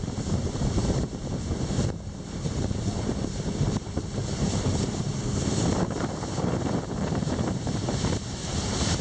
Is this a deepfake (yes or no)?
yes